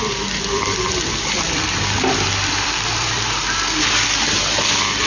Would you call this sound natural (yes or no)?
no